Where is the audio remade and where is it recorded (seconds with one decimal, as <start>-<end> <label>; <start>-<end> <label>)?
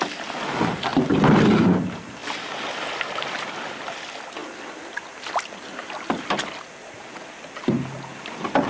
0.0-8.7 recorded